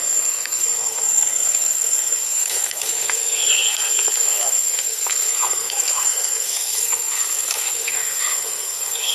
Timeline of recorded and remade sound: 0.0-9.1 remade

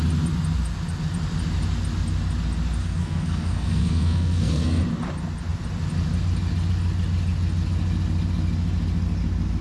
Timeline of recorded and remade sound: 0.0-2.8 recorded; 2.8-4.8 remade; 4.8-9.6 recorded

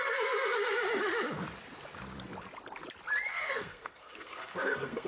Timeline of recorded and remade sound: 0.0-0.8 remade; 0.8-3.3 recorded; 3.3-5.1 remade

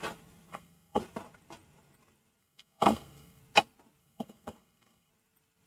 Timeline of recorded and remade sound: 0.0-0.5 recorded; 0.5-1.0 remade; 1.0-2.4 recorded; 2.4-3.4 remade; 3.4-4.0 recorded; 4.0-5.1 remade; 5.1-5.7 recorded

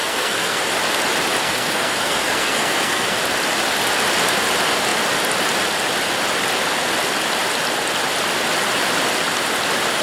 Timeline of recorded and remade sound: 0.0-0.6 remade; 0.6-1.4 recorded; 1.4-3.2 remade; 3.2-10.0 recorded